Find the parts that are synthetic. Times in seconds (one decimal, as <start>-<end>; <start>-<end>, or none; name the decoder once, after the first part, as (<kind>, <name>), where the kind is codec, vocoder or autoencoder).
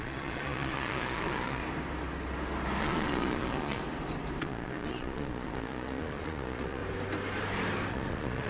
0.0-1.6 (vocoder, Vocos); 2.8-3.8; 4.4-6.8; 7.9-8.5